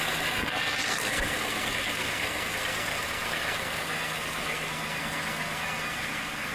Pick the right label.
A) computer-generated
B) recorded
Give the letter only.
A